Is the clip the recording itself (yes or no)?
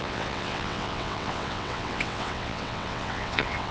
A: no